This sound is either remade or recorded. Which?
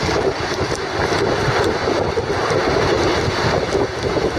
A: recorded